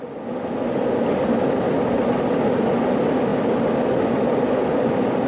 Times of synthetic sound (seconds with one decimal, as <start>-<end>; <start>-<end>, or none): none